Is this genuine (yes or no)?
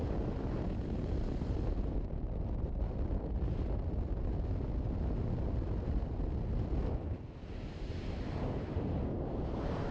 yes